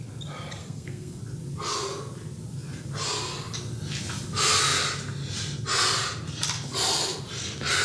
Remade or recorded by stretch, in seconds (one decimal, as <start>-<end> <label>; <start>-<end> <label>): 0.0-0.6 recorded; 0.6-1.2 remade; 1.2-7.8 recorded